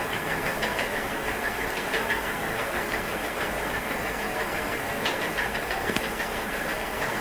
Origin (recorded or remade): remade